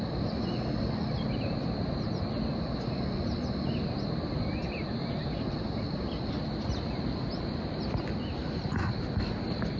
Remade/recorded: recorded